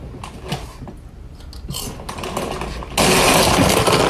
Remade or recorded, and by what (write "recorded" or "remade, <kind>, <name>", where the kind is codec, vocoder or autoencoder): recorded